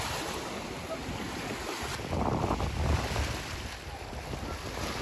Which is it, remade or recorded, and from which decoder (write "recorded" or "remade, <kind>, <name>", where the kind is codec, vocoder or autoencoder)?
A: recorded